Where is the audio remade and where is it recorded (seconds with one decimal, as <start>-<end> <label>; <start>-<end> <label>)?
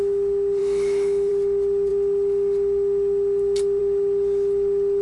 0.0-0.6 recorded; 0.6-1.3 remade; 1.3-5.0 recorded